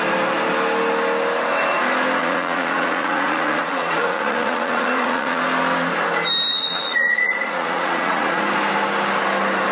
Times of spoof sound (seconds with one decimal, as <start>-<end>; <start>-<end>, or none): 2.2-5.4; 6.5-8.4

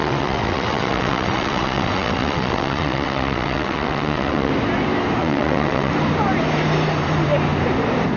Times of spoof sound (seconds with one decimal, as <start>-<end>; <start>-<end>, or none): 0.0-4.5; 5.2-5.9

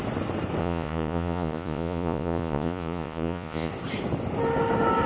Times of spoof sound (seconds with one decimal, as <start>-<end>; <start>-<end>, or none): 0.6-3.7